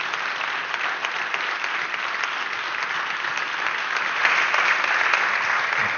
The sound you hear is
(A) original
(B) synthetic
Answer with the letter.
A